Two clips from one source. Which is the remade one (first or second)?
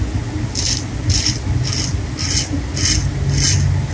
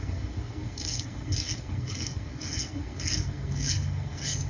second